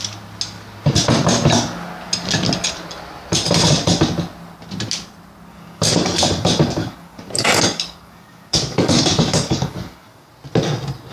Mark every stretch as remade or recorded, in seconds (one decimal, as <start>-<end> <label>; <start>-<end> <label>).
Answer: 0.0-5.5 recorded; 5.5-6.2 remade; 6.2-6.8 recorded; 6.8-10.3 remade; 10.3-11.1 recorded